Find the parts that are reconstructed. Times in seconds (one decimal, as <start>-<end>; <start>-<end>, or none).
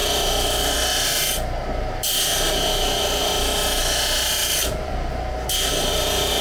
4.4-5.1